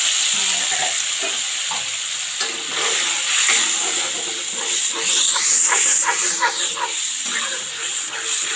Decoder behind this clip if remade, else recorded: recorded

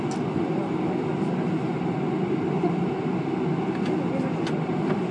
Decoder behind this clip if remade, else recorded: recorded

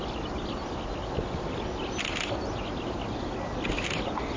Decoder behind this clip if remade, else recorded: recorded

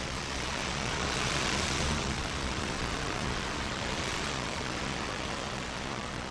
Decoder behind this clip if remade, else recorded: remade, vocoder, Vocos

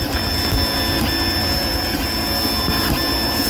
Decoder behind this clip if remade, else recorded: recorded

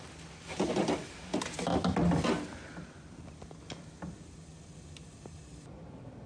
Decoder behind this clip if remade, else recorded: recorded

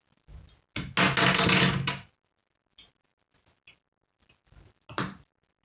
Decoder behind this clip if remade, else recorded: recorded